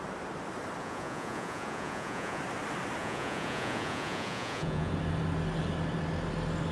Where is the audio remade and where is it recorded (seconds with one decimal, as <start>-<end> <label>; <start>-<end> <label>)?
0.0-0.8 recorded; 0.8-2.4 remade; 2.4-3.0 recorded; 3.0-4.9 remade; 4.9-6.7 recorded